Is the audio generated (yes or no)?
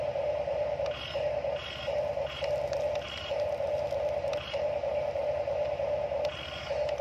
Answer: no